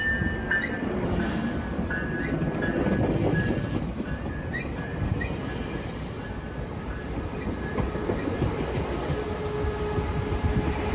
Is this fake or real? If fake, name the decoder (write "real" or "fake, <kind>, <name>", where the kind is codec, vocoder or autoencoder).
real